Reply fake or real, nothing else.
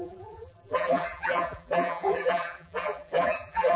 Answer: fake